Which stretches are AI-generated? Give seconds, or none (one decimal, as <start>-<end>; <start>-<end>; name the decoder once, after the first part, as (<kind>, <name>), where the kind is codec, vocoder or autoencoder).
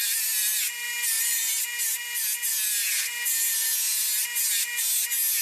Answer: none